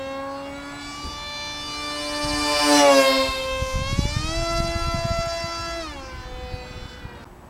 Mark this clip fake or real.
real